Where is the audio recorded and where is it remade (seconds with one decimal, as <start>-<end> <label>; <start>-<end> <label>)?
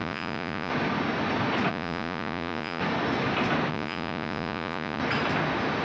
0.0-0.7 remade; 0.7-1.7 recorded; 1.7-2.8 remade; 2.8-3.7 recorded; 3.7-5.0 remade; 5.0-5.8 recorded